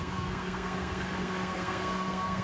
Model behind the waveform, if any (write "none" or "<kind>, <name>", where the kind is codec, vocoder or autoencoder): codec, SNAC